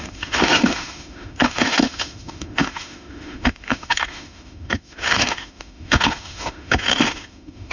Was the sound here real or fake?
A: fake